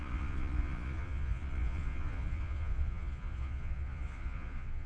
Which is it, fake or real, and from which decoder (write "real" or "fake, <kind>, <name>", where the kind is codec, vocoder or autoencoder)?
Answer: fake, vocoder, Vocos